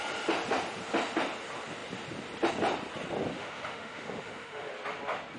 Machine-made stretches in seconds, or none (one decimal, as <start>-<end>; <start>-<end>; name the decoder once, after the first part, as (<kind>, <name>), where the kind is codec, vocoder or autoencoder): 3.3-4.7 (autoencoder, DAC-VAE)